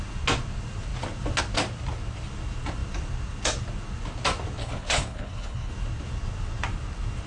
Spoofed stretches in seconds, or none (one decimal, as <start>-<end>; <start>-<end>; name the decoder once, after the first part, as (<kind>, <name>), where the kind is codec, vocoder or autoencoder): 4.6-5.7 (codec, HILCodec)